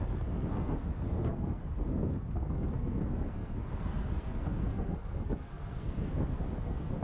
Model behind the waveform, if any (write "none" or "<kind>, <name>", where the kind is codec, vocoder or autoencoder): codec, SNAC